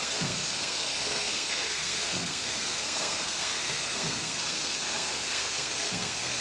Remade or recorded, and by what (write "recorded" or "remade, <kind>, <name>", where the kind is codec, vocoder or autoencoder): remade, codec, SNAC